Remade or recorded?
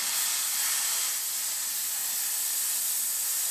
recorded